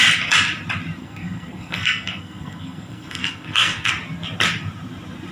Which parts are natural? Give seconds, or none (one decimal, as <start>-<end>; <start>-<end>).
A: 0.0-1.0; 3.9-5.3